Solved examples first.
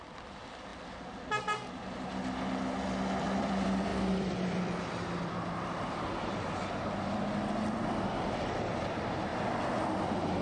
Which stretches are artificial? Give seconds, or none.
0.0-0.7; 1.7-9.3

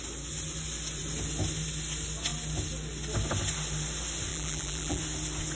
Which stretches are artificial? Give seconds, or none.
4.3-5.0

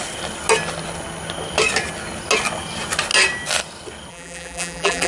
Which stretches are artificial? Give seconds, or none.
4.1-5.1